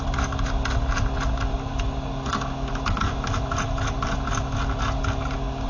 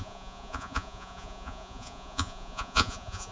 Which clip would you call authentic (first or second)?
first